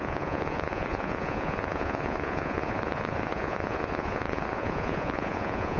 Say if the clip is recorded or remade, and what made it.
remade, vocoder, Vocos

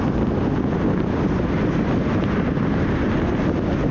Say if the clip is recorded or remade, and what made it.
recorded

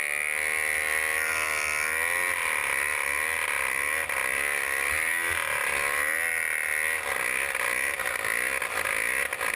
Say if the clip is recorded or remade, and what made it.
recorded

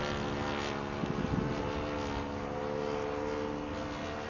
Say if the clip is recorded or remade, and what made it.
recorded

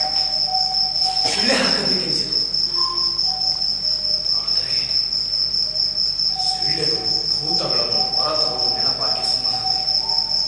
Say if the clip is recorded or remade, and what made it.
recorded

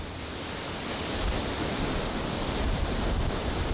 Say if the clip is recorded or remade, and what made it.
recorded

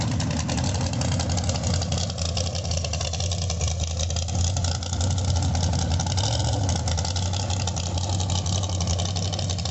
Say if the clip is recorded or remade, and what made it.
recorded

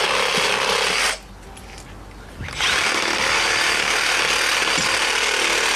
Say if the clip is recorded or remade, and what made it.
recorded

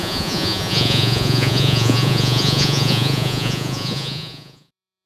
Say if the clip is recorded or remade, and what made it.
remade, vocoder, Vocos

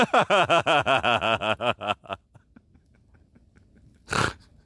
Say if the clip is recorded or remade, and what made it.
recorded